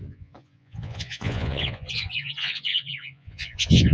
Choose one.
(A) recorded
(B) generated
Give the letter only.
B